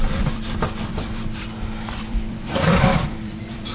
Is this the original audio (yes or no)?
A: no